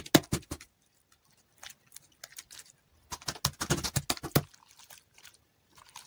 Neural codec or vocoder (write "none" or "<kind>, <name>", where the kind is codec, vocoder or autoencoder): none